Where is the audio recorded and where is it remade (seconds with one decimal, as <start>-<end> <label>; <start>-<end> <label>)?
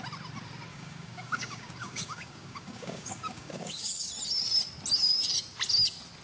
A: 0.0-0.7 recorded; 0.7-4.1 remade; 4.1-6.2 recorded